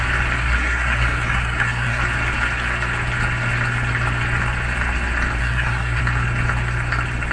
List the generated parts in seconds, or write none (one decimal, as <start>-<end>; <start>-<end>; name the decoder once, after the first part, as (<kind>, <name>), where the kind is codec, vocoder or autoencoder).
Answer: 0.4-2.0 (codec, SNAC); 5.4-6.0